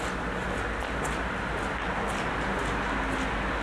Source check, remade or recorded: recorded